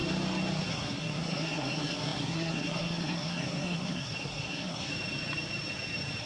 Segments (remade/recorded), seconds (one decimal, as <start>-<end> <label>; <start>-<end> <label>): 0.0-0.7 recorded; 0.7-4.9 remade; 4.9-6.2 recorded

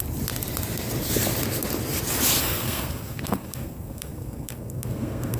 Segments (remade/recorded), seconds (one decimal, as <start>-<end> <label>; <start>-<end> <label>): 0.0-2.4 recorded; 2.4-5.4 remade

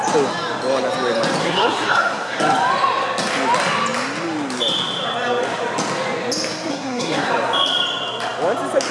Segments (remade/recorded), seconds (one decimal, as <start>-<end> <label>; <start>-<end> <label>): 0.0-1.4 recorded; 1.4-2.4 remade; 2.4-6.7 recorded; 6.7-7.3 remade; 7.3-8.9 recorded

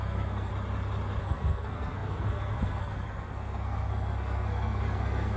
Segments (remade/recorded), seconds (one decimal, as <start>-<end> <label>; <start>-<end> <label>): 0.0-0.5 remade; 0.5-1.2 recorded; 1.2-5.4 remade

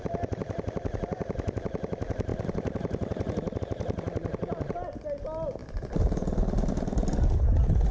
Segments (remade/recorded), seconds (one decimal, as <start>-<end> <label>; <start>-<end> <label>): 0.0-7.9 recorded

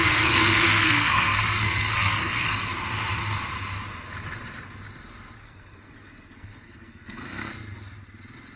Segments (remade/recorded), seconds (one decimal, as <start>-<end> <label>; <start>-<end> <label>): 0.0-2.7 remade; 2.7-5.4 recorded; 5.4-7.5 remade; 7.5-8.6 recorded

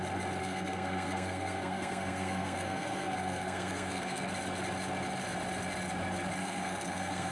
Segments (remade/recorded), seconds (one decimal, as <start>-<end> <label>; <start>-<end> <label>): 0.0-0.4 recorded; 0.4-4.3 remade; 4.3-6.4 recorded; 6.4-7.3 remade

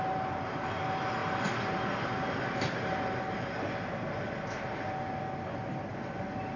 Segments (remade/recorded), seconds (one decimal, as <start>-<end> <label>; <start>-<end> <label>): 0.0-6.6 recorded